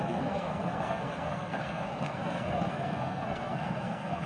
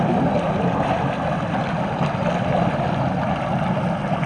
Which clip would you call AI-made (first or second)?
first